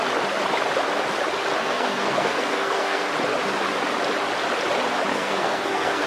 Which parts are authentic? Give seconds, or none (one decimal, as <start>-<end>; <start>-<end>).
0.0-1.6; 3.1-5.1